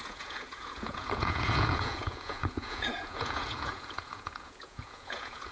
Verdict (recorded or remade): remade